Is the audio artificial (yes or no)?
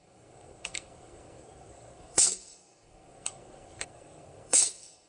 yes